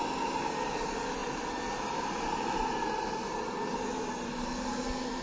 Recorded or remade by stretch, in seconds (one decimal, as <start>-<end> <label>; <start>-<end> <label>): 0.0-5.2 recorded